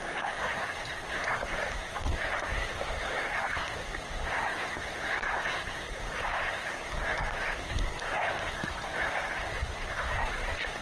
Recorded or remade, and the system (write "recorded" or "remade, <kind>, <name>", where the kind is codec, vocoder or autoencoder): remade, codec, SNAC